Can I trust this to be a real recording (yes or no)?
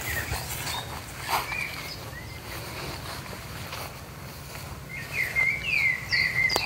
yes